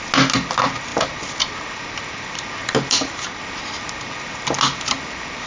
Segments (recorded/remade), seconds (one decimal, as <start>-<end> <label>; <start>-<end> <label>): 0.0-5.5 recorded